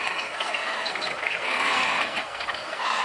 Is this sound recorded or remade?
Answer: remade